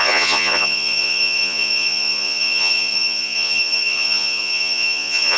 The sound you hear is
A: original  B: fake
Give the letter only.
B